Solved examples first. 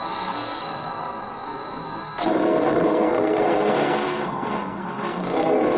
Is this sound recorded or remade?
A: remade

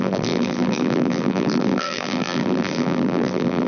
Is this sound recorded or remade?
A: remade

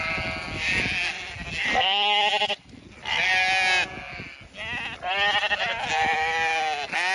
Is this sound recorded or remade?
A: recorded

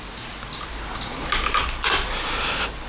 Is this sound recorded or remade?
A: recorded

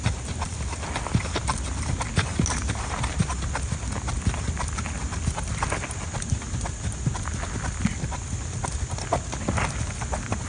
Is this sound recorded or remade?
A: recorded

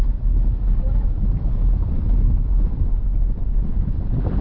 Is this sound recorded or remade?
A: recorded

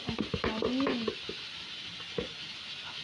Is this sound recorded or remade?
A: recorded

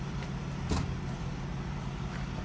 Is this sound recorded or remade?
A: remade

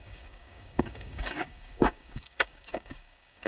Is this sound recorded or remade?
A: remade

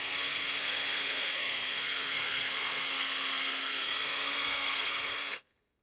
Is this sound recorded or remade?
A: remade